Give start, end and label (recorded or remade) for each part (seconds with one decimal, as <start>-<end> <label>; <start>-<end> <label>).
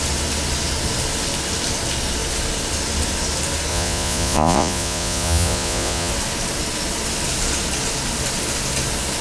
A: 0.0-3.7 recorded; 3.7-6.1 remade; 6.1-9.2 recorded